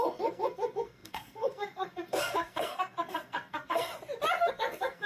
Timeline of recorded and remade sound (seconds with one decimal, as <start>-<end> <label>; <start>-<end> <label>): 0.0-3.9 remade; 3.9-4.5 recorded; 4.5-5.1 remade